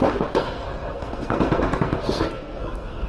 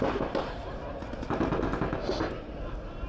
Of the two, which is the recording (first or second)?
second